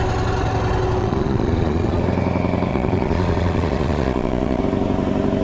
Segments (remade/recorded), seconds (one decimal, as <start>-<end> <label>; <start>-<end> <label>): 0.0-1.0 recorded; 1.0-2.0 remade; 2.0-2.7 recorded; 2.7-4.6 remade; 4.6-5.4 recorded